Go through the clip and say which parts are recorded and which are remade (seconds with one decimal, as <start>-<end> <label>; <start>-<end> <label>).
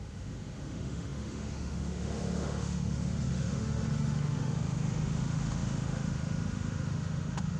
0.0-7.6 remade